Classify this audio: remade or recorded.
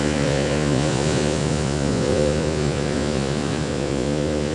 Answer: remade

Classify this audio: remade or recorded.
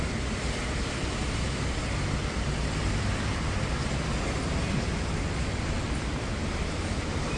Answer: recorded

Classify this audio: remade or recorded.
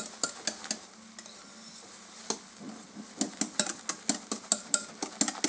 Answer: recorded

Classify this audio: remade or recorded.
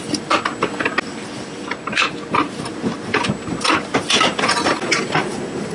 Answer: recorded